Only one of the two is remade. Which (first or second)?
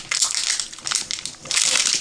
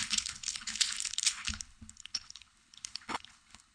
second